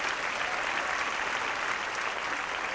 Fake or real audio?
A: real